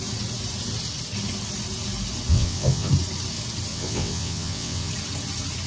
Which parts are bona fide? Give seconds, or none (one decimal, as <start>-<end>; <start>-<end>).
0.0-2.3; 2.9-3.7; 4.9-5.7